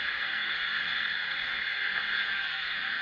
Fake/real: fake